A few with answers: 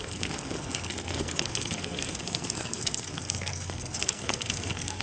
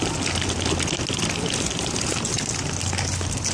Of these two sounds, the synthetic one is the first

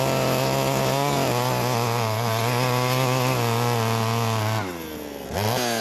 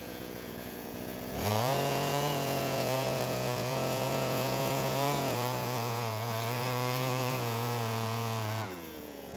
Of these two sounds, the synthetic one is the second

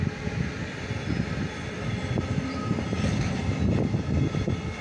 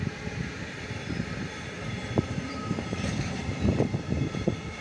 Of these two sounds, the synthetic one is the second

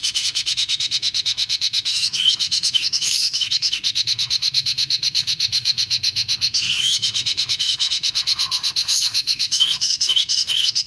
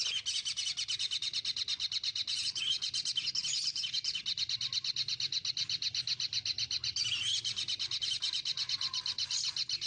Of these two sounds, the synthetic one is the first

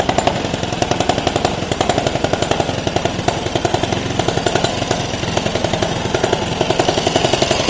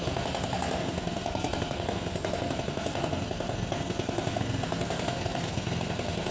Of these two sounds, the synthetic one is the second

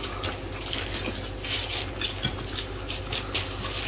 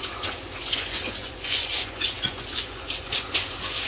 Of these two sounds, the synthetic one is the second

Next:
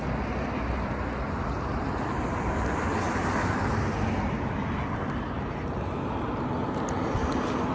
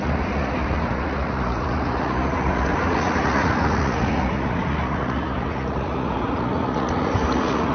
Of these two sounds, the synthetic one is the second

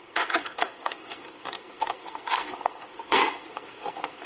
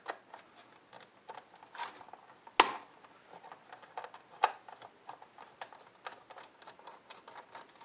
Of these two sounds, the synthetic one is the first